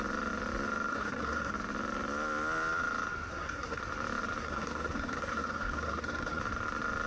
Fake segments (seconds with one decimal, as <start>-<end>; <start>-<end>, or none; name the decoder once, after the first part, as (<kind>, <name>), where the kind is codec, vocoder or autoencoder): 0.9-1.5 (codec, SNAC); 3.3-3.8; 4.4-6.4